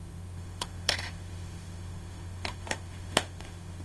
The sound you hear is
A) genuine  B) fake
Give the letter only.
B